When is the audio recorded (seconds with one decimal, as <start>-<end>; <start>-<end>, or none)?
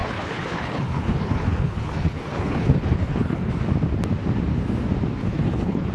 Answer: 3.5-5.2